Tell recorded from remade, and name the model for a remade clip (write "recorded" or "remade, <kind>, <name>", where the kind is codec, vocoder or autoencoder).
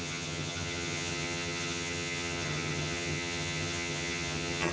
remade, vocoder, HiFi-GAN